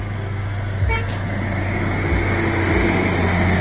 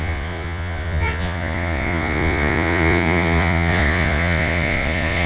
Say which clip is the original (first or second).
first